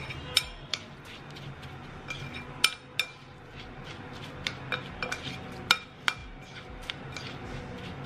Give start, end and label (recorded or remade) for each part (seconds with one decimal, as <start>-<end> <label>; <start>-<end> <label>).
0.0-8.1 recorded